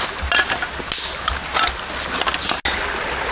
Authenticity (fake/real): real